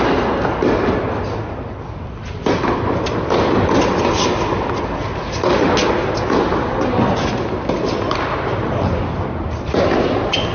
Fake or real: real